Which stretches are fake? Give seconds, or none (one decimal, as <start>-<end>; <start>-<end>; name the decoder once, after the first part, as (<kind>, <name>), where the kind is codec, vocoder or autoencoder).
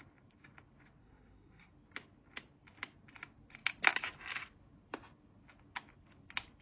1.0-1.7 (codec, SNAC)